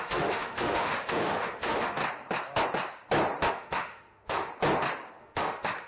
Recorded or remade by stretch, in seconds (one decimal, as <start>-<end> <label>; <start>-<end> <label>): 0.0-2.0 remade; 2.0-3.5 recorded; 3.5-4.5 remade; 4.5-5.2 recorded; 5.2-5.9 remade